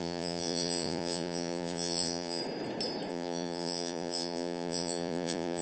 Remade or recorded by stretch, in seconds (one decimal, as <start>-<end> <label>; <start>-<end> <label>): 0.0-2.4 remade; 2.4-3.1 recorded; 3.1-5.6 remade